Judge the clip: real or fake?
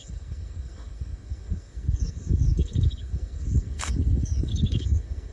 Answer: fake